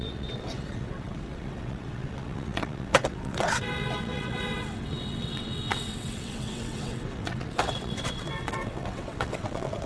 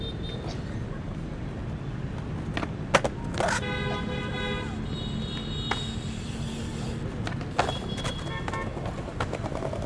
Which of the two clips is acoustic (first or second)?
second